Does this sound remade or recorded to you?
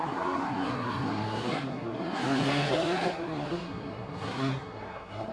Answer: remade